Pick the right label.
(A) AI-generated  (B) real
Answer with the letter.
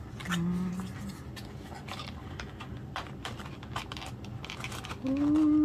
B